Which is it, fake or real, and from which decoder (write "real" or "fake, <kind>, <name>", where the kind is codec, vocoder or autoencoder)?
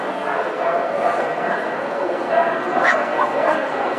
fake, codec, SNAC